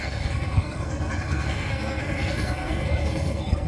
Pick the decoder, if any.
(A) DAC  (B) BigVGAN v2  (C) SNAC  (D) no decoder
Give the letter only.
C